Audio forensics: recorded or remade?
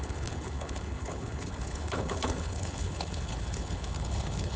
remade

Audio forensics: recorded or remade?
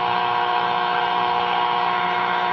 remade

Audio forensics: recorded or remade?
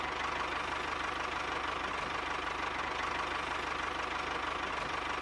recorded